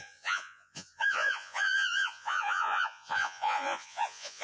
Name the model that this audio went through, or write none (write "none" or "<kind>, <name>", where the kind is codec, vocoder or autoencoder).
vocoder, Vocos